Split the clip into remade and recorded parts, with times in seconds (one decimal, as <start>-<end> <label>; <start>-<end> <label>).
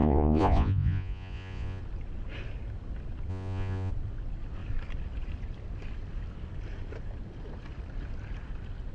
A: 0.0-1.8 remade; 1.8-3.3 recorded; 3.3-3.9 remade; 3.9-8.9 recorded